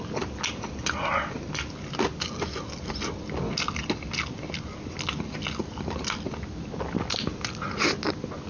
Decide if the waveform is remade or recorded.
recorded